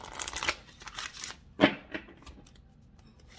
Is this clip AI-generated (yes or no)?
no